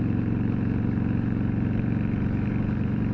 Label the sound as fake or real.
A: fake